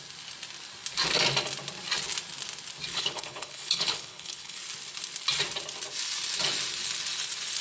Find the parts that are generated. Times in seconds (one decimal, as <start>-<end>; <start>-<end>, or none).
2.9-4.6